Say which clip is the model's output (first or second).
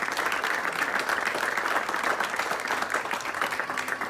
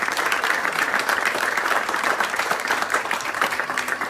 second